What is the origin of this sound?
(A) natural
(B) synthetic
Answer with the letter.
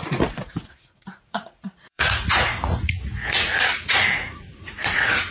B